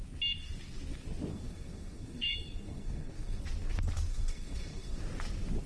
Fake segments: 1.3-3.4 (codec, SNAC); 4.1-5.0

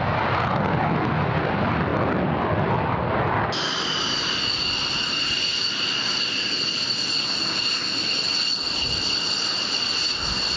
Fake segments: none

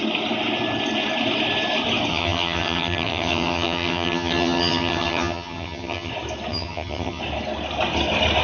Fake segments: 2.1-6.1 (vocoder, HiFi-GAN); 6.5-7.2

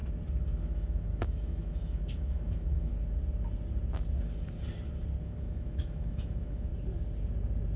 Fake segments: 0.6-2.9 (autoencoder, DAC-VAE); 5.2-6.7

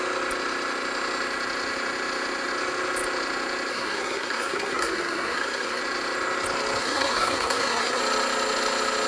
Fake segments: 3.7-5.8 (codec, SNAC); 6.8-8.0

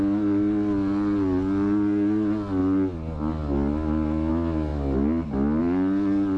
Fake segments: none

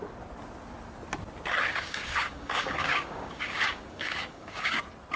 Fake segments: 1.7-4.8 (codec, DAC)